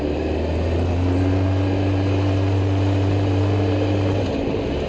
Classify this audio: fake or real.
real